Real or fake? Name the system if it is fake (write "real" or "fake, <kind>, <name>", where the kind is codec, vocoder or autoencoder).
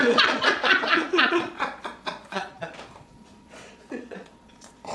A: fake, vocoder, Vocos